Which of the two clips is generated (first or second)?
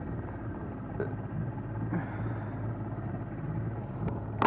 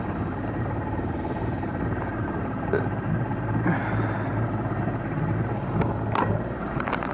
second